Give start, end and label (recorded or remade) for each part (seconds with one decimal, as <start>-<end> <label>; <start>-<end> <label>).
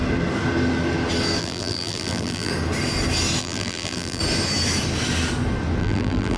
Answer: 0.0-1.4 recorded; 1.4-2.5 remade; 2.5-3.4 recorded; 3.4-4.2 remade; 4.2-5.8 recorded; 5.8-6.4 remade